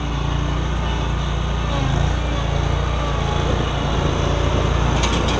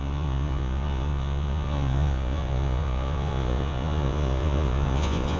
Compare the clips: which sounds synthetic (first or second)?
second